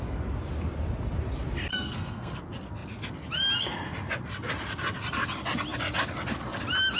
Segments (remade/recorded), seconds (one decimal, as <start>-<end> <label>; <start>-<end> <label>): 0.0-1.7 recorded; 1.7-2.4 remade; 2.4-7.0 recorded